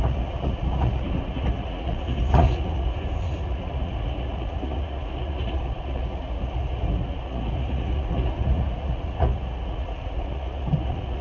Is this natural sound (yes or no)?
no